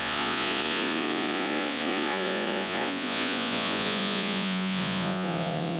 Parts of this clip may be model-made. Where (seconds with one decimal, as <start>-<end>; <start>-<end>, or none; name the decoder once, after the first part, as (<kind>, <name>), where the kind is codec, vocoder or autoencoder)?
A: 0.0-5.8 (vocoder, Vocos)